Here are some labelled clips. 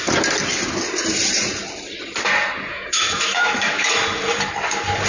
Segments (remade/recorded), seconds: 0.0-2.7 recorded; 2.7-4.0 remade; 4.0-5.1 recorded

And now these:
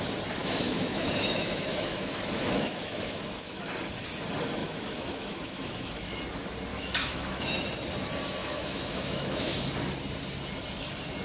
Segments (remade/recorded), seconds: 0.0-0.4 recorded; 0.4-3.6 remade; 3.6-4.6 recorded; 4.6-6.2 remade; 6.2-6.7 recorded; 6.7-7.5 remade; 7.5-8.4 recorded; 8.4-9.6 remade; 9.6-11.2 recorded

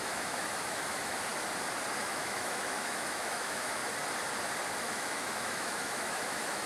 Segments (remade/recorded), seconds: 0.0-1.3 remade; 1.3-2.0 recorded; 2.0-3.8 remade; 3.8-4.8 recorded; 4.8-6.7 remade

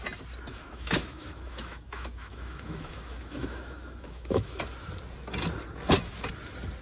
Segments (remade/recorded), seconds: 0.0-0.5 recorded; 0.5-4.6 remade; 4.6-6.8 recorded

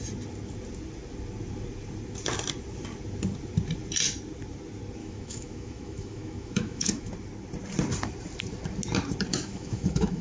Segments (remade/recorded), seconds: 0.0-5.0 recorded; 5.0-7.1 remade; 7.1-9.3 recorded; 9.3-10.2 remade

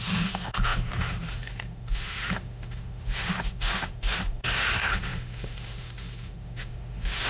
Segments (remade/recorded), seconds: 0.0-7.3 remade